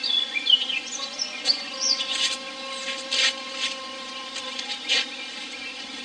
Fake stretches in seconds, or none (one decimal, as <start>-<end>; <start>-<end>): 0.0-2.1